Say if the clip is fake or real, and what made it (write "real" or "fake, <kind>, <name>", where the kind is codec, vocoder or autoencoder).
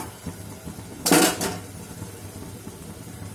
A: fake, vocoder, BigVGAN v2